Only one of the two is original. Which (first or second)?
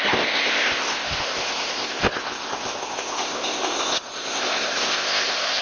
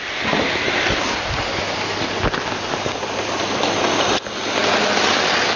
second